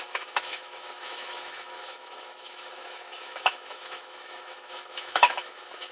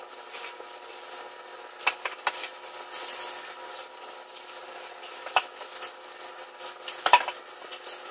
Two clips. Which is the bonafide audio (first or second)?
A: second